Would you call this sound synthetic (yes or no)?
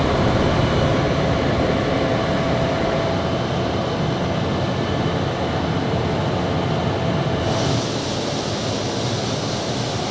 no